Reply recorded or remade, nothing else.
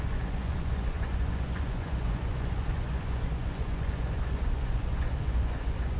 remade